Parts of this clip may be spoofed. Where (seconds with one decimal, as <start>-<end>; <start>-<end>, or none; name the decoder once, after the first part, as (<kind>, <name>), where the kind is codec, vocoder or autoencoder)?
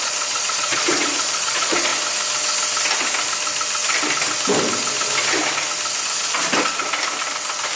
0.0-1.9 (vocoder, Vocos); 6.0-6.5